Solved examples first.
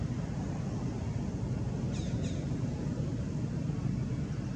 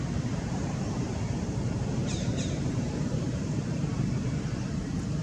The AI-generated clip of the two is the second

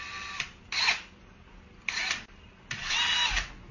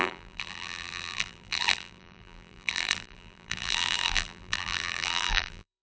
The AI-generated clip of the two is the second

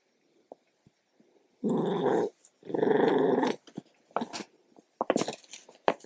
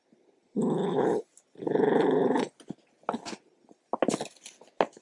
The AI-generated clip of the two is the first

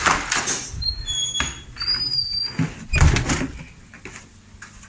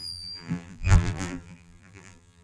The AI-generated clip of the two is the second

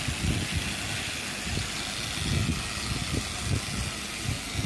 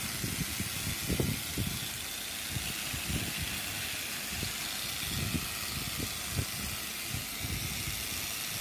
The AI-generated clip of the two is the second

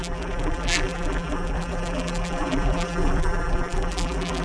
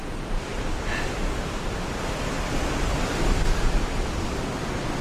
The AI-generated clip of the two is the first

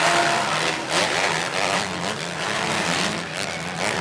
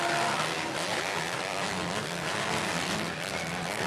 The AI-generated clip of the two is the first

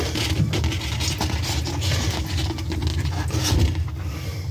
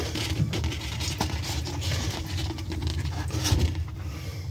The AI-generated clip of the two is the second